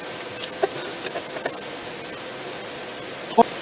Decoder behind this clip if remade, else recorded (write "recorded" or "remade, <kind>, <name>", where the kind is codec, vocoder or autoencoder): recorded